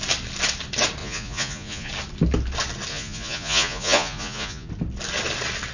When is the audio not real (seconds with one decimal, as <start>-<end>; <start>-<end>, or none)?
1.0-1.9; 2.9-4.7